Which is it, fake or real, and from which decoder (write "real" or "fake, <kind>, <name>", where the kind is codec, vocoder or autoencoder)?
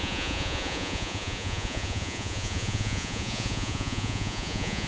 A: fake, vocoder, Vocos